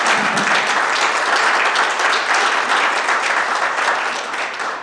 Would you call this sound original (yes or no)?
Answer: yes